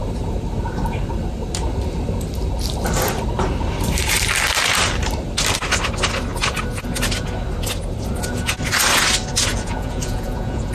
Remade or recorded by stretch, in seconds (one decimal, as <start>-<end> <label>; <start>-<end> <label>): 0.0-9.5 recorded; 9.5-10.7 remade